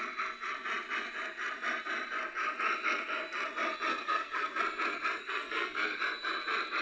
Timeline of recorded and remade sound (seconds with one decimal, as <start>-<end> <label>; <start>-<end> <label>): 0.0-3.9 recorded; 3.9-4.6 remade; 4.6-5.2 recorded; 5.2-6.0 remade; 6.0-6.8 recorded